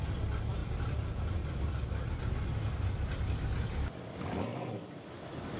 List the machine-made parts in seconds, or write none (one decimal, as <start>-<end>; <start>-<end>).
0.6-2.3; 4.5-5.1